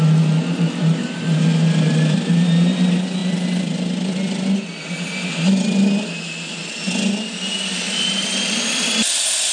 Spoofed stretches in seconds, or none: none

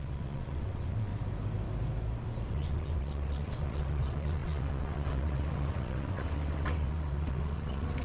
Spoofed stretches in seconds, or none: 0.0-1.1 (vocoder, WaveNeXt); 2.5-8.0

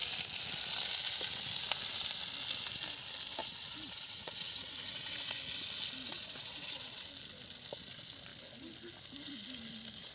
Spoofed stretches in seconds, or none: 3.4-5.4 (vocoder, WaveNeXt); 6.0-7.1

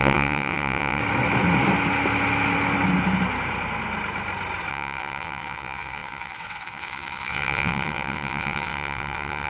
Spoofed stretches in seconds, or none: 0.0-1.0 (vocoder, WaveNeXt); 4.7-9.5

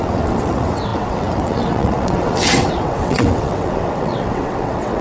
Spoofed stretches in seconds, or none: 0.0-5.0 (vocoder, WaveNeXt)

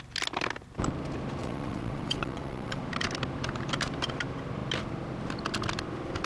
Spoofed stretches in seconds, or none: 1.4-2.8 (vocoder, WaveNeXt)

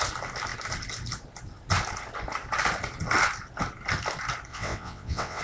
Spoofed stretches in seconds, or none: 4.5-5.4 (vocoder, WaveNeXt)

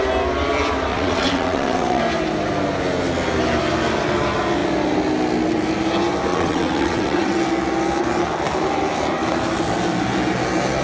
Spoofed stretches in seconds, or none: 0.9-2.0 (vocoder, WaveNeXt); 6.3-7.4